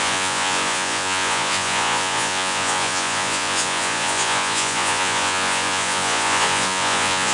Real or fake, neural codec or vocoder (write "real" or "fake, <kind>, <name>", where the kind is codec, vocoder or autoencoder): fake, vocoder, Vocos